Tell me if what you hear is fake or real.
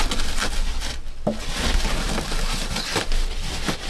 real